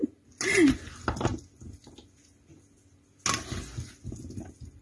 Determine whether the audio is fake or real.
real